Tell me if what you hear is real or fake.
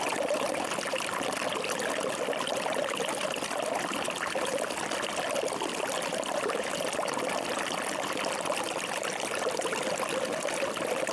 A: real